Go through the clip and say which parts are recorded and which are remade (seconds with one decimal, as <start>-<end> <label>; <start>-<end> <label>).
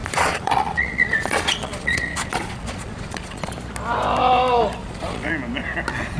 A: 0.0-3.5 remade; 3.5-4.8 recorded; 4.8-5.3 remade; 5.3-6.2 recorded